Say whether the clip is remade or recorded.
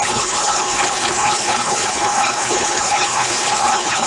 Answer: remade